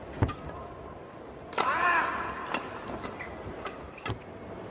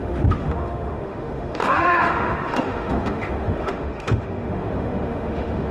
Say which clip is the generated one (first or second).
second